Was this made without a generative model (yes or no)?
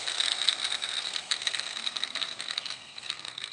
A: no